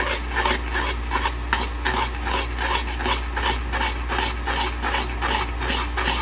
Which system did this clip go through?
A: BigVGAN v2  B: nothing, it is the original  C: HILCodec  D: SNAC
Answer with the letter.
B